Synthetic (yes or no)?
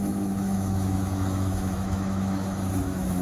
yes